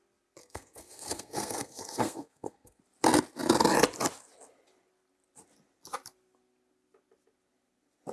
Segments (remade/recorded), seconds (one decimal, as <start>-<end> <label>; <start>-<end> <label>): 0.0-0.4 recorded; 0.4-2.8 remade; 2.8-8.1 recorded